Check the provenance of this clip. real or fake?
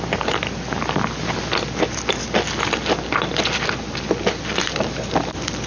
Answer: real